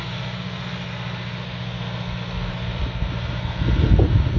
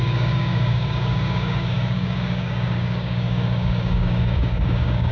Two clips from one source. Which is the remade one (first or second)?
second